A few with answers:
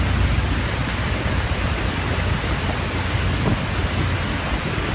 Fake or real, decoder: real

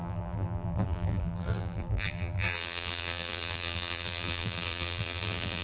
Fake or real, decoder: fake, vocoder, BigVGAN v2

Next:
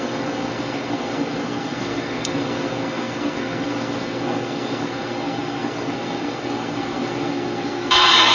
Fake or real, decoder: fake, codec, SNAC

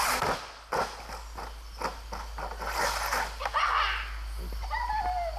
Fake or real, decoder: real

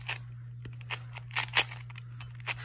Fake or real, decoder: real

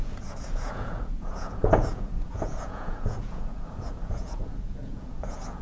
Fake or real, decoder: fake, vocoder, Vocos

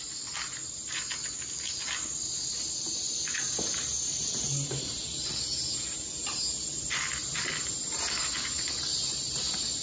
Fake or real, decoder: real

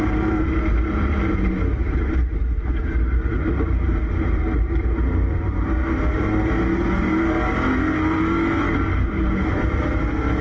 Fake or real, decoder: fake, vocoder, BigVGAN v2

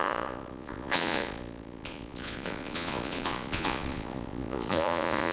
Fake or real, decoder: fake, vocoder, Vocos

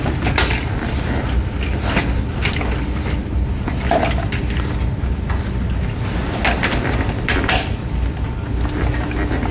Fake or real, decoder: real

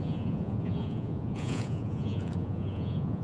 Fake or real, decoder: fake, vocoder, Vocos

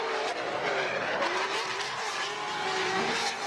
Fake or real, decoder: fake, vocoder, BigVGAN v2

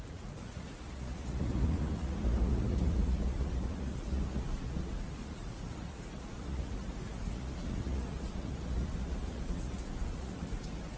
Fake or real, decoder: fake, vocoder, Vocos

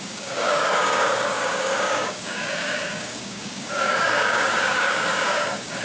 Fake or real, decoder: fake, codec, DAC